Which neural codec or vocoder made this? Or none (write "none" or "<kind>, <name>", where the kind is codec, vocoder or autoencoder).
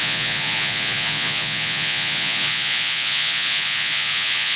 vocoder, Vocos